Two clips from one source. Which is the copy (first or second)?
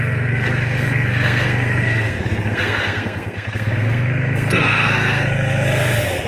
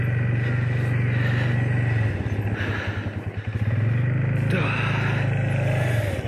first